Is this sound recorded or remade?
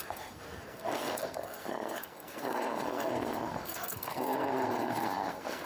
remade